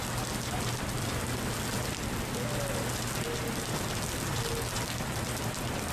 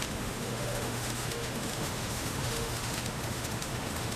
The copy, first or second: second